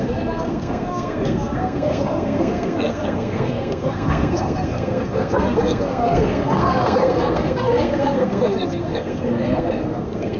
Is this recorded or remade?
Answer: remade